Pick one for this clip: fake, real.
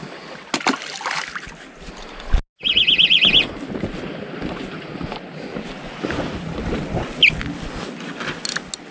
real